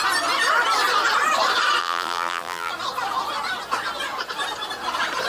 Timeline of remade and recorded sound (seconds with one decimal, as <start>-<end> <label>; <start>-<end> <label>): 0.0-1.8 recorded; 1.8-2.7 remade; 2.7-5.3 recorded